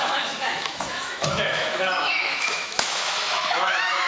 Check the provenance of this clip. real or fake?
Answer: fake